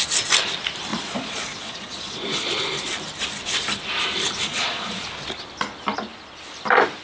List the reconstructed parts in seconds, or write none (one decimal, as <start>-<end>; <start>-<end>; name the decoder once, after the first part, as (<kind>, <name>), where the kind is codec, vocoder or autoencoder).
0.9-2.5 (vocoder, Vocos); 4.5-5.0